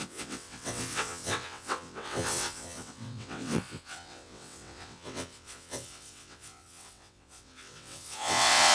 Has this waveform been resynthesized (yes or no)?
yes